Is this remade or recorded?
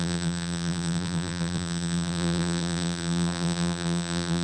remade